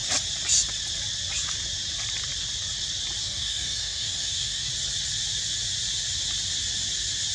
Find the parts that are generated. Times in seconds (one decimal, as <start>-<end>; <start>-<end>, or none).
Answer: 3.2-4.7